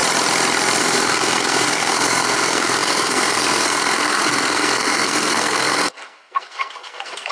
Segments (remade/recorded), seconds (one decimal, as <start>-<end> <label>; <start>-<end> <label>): 0.0-0.8 recorded; 0.8-7.3 remade